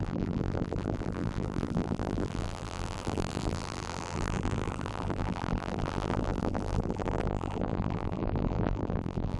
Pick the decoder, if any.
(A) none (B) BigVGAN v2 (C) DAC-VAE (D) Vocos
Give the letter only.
B